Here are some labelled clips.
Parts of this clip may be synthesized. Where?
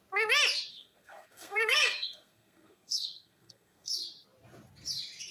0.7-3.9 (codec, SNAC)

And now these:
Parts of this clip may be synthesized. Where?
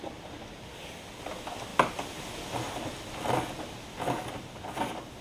none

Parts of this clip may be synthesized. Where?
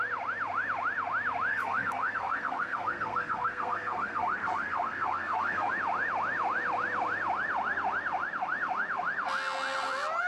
1.5-5.7 (codec, SNAC)